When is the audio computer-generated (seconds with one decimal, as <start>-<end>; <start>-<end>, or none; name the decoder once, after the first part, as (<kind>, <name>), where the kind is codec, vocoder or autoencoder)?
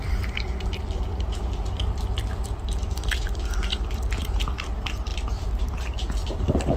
0.0-6.8 (vocoder, BigVGAN v2)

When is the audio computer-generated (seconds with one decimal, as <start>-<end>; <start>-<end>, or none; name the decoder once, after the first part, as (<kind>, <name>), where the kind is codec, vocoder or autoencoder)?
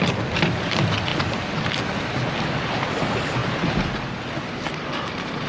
3.4-4.1 (vocoder, BigVGAN v2)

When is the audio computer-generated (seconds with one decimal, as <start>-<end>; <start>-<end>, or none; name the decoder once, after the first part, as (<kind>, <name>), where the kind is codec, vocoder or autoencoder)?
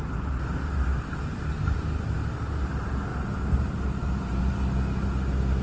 3.1-4.4 (vocoder, BigVGAN v2)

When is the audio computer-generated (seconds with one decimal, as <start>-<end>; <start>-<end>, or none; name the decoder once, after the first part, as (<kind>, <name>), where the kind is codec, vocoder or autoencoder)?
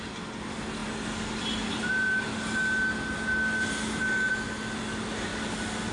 none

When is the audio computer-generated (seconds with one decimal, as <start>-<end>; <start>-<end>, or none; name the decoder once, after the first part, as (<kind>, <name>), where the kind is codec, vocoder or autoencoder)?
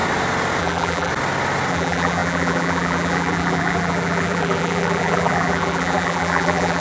0.6-1.1 (vocoder, BigVGAN v2); 1.7-6.8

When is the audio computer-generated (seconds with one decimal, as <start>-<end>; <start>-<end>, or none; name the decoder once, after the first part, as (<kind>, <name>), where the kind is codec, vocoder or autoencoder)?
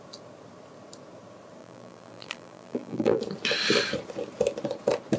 1.6-3.2 (vocoder, BigVGAN v2)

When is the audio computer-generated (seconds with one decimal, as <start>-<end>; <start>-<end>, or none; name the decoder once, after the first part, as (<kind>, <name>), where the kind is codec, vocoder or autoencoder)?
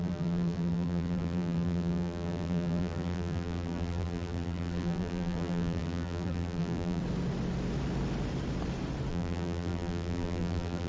0.0-7.0 (vocoder, BigVGAN v2); 9.1-10.9